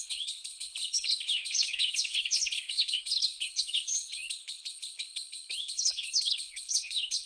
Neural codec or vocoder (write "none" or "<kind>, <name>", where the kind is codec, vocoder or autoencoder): codec, HILCodec